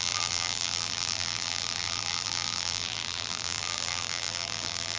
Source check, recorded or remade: remade